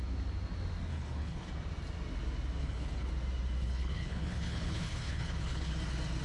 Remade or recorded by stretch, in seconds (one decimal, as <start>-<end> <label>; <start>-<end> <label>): 0.0-0.9 recorded; 0.9-1.5 remade; 1.5-2.6 recorded; 2.6-3.1 remade; 3.1-3.6 recorded; 3.6-5.7 remade; 5.7-6.2 recorded